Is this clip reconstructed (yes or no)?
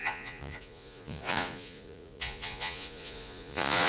yes